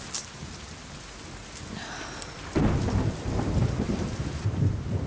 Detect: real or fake real